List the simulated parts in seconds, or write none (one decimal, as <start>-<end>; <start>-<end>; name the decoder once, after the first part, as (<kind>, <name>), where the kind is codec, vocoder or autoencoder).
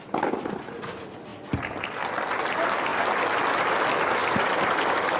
2.9-3.7 (vocoder, BigVGAN v2); 4.2-4.7